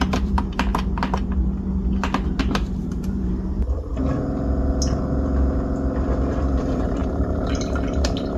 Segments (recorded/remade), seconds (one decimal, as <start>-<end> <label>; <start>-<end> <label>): 0.0-0.7 remade; 0.7-2.4 recorded; 2.4-3.9 remade; 3.9-6.3 recorded; 6.3-7.0 remade; 7.0-8.4 recorded